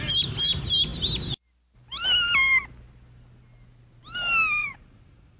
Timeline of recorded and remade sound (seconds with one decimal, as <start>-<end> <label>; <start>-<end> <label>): 0.0-4.6 recorded; 4.6-5.4 remade